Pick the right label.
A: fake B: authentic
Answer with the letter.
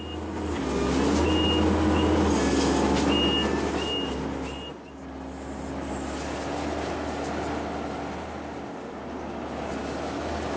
B